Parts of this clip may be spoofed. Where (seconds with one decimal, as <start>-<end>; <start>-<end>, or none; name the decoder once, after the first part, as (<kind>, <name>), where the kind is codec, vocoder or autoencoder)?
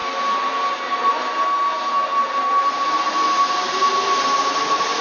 none